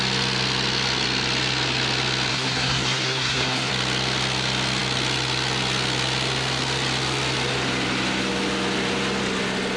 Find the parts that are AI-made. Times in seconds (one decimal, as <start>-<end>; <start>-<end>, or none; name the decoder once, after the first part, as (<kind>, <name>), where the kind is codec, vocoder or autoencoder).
2.3-3.7 (codec, SNAC)

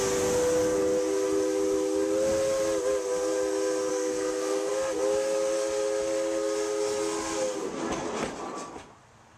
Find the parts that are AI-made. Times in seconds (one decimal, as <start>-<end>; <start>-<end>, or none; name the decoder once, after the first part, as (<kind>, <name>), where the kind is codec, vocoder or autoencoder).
3.9-4.7 (codec, SNAC)